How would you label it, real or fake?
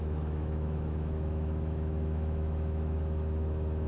fake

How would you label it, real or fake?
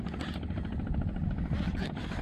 real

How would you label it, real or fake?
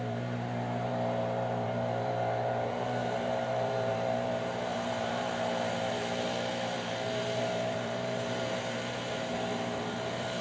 fake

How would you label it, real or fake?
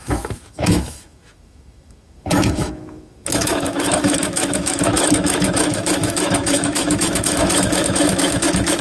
fake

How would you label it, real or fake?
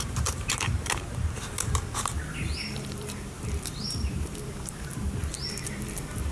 fake